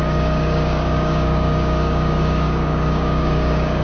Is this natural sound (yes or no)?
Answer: no